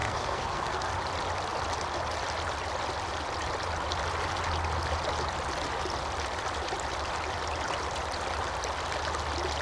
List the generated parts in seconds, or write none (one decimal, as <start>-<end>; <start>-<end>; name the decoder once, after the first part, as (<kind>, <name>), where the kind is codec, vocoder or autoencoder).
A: 0.0-0.9 (codec, SNAC)